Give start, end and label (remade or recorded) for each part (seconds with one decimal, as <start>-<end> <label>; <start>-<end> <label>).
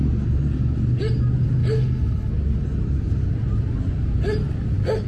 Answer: 0.0-1.6 recorded; 1.6-2.3 remade; 2.3-5.1 recorded